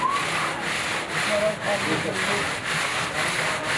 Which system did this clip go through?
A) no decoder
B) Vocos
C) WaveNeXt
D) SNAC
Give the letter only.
A